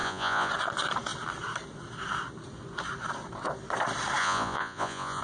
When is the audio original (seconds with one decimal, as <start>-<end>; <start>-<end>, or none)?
0.5-4.2